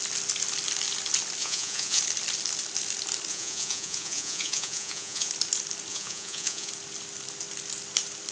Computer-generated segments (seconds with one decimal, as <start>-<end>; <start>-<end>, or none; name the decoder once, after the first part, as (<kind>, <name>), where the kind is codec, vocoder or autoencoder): 1.4-2.0 (vocoder, Vocos); 3.3-5.3; 5.9-6.7